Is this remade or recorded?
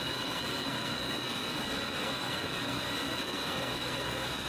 remade